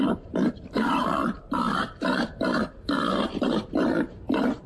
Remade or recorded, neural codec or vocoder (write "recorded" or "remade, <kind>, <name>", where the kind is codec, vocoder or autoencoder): remade, vocoder, BigVGAN v2